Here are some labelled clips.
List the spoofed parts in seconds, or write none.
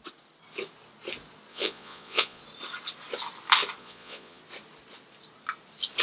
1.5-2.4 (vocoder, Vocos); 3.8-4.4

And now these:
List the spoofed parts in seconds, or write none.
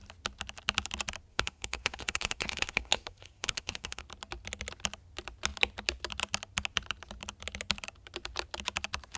1.3-4.0 (codec, SNAC)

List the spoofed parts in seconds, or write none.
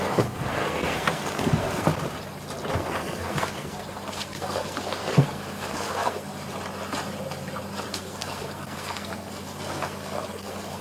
0.0-1.9 (codec, SNAC); 2.7-6.3; 7.9-10.8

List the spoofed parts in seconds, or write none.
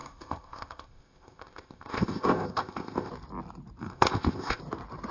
0.0-3.1 (codec, ZipCodec); 3.8-4.6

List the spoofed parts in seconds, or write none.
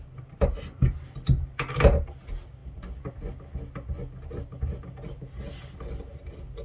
none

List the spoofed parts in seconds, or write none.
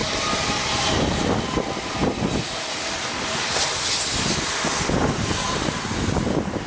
none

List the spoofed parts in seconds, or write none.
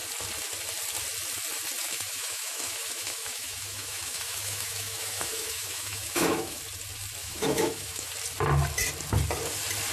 1.8-6.6 (autoencoder, DAC-VAE); 7.2-8.1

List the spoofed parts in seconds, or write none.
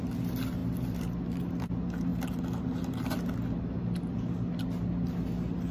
none